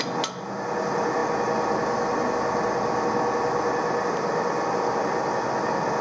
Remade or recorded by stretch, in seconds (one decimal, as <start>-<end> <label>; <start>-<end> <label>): 0.0-6.0 recorded